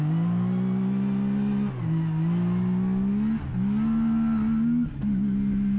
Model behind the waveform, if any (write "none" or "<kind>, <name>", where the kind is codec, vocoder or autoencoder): none